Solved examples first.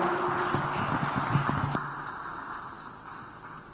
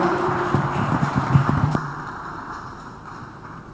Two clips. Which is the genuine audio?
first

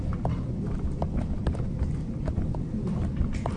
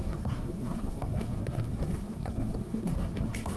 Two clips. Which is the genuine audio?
first